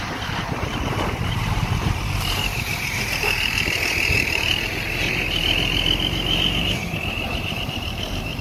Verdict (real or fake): fake